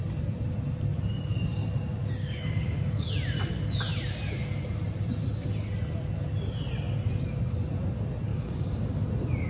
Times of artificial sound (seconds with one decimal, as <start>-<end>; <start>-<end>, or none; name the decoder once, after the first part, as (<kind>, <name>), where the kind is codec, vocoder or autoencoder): 2.2-3.1 (codec, DAC); 8.3-9.1